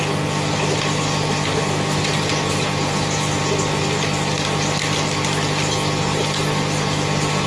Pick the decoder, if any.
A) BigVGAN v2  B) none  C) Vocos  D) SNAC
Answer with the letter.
B